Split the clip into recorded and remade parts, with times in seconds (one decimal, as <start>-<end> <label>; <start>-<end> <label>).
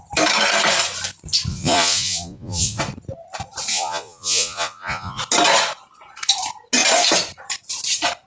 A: 0.0-1.5 recorded; 1.5-2.8 remade; 2.8-3.7 recorded; 3.7-5.2 remade; 5.2-8.3 recorded